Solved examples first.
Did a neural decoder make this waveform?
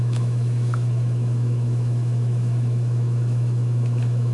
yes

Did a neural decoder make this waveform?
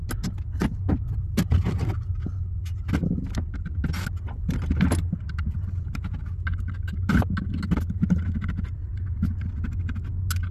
no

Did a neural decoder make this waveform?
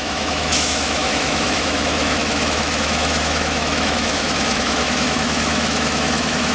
yes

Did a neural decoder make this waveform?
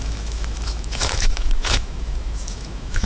yes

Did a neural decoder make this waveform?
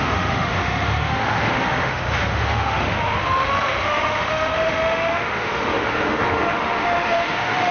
yes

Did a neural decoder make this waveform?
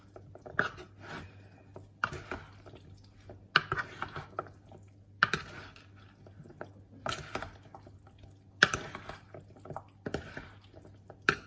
no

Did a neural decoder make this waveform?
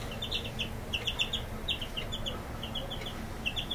no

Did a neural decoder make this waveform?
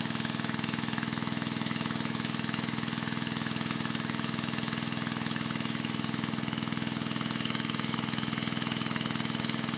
yes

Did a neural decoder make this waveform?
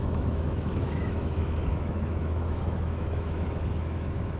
yes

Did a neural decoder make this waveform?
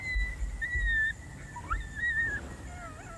no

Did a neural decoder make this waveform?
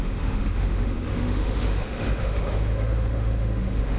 yes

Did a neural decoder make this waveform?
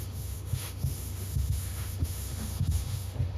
yes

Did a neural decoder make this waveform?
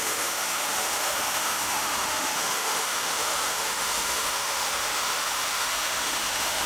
yes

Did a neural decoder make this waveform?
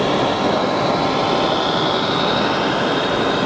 no